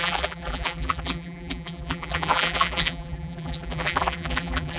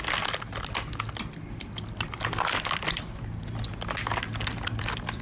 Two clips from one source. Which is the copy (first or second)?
first